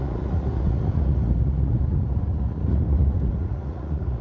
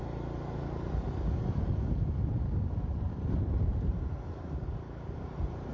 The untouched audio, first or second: second